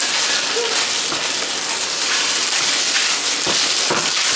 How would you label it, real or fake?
real